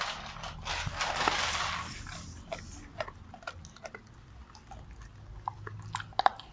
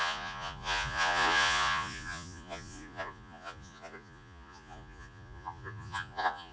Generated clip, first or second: second